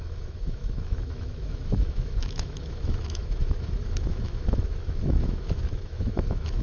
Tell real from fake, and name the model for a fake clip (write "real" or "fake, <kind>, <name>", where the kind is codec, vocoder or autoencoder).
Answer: fake, autoencoder, DAC-VAE